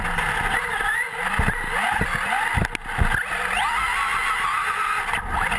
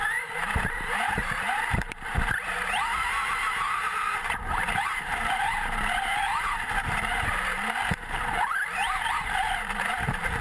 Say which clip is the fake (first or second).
second